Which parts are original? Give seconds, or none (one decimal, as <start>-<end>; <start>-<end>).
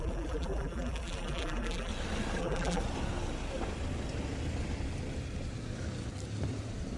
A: 1.9-2.4; 2.8-7.0